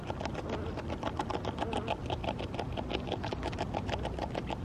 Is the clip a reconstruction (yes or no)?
no